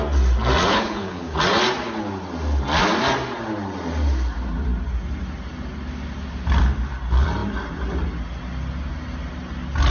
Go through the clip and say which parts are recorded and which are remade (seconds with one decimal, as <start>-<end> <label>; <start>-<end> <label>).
0.0-0.7 recorded; 0.7-1.4 remade; 1.4-9.9 recorded